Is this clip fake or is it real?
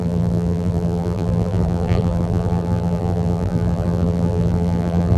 fake